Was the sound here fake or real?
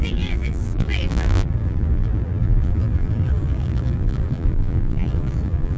fake